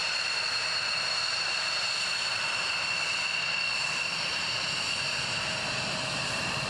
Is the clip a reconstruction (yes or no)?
yes